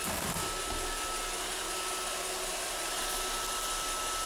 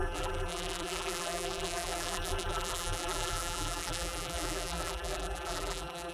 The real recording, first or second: first